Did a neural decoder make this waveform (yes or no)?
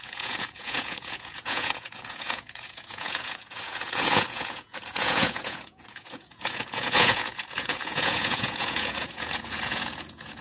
yes